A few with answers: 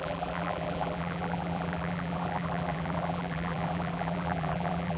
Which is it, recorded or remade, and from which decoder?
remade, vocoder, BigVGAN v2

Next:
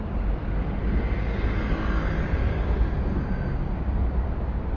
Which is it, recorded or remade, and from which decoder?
recorded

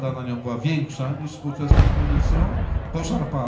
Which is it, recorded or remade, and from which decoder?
recorded